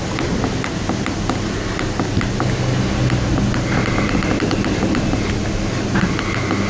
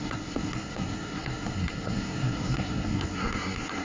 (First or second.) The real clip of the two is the first